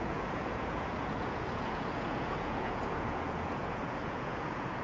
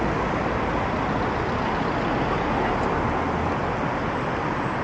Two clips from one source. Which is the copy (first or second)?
first